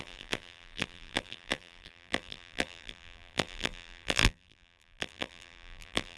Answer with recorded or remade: remade